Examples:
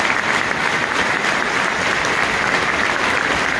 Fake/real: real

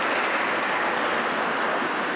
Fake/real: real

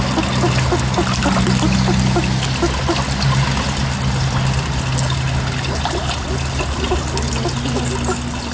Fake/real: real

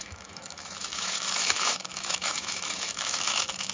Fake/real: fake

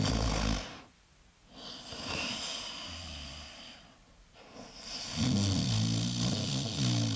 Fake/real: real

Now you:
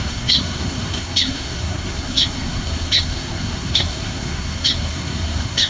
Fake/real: fake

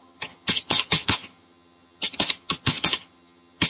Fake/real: fake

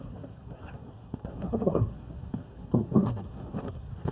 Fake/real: fake